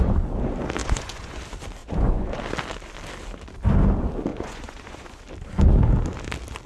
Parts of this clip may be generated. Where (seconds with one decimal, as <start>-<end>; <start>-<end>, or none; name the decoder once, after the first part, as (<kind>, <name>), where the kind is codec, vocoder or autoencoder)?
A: 0.8-1.4 (vocoder, Vocos); 1.8-2.4; 4.3-5.2